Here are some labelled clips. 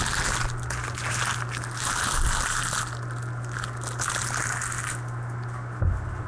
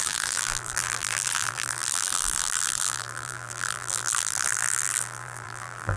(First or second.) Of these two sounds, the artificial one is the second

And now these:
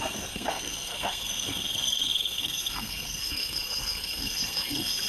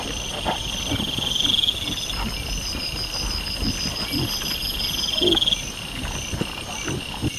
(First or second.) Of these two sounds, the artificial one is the first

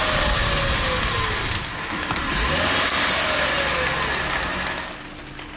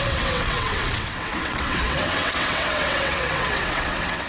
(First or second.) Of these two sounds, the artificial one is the second